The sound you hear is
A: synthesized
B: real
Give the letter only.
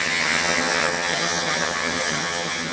A